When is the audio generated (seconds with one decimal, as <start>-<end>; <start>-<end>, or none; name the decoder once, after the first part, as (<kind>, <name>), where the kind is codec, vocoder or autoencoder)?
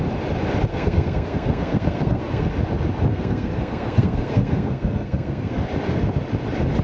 0.7-2.5 (codec, SNAC); 3.1-5.6